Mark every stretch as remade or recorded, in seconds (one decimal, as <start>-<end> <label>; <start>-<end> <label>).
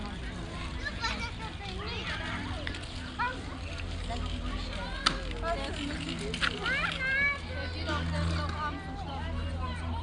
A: 0.0-10.0 recorded